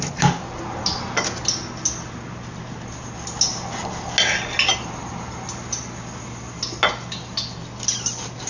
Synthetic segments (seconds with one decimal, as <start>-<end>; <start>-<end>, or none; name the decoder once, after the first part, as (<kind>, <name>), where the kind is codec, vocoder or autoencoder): none